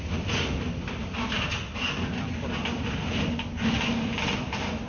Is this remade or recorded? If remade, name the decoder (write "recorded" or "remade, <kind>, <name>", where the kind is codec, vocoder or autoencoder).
recorded